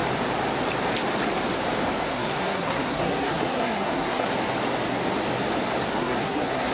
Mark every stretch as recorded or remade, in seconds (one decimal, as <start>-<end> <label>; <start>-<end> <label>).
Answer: 0.0-2.1 recorded; 2.1-4.3 remade; 4.3-5.9 recorded; 5.9-6.7 remade